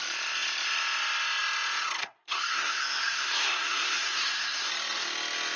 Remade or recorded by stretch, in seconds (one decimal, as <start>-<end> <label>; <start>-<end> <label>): 0.0-2.0 recorded; 2.0-4.7 remade; 4.7-5.6 recorded